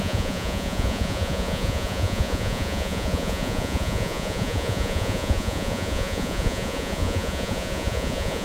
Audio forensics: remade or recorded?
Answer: remade